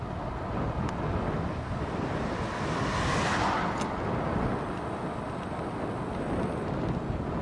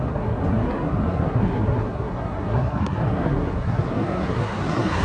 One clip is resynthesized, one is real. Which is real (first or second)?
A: first